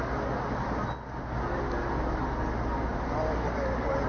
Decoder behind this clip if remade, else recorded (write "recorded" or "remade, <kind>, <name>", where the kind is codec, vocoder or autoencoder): recorded